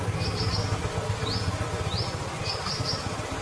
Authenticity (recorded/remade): recorded